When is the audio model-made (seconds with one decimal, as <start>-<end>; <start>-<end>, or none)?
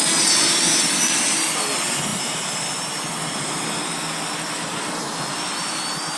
none